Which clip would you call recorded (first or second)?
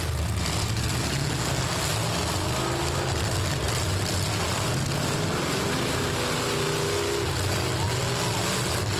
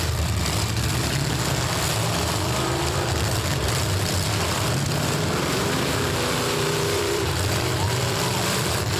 first